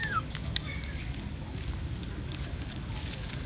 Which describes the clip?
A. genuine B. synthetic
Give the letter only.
B